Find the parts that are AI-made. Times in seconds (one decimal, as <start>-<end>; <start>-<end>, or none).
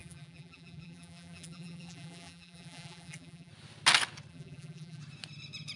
0.0-3.5; 4.3-5.0